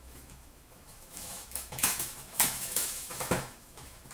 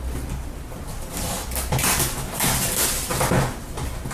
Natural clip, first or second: second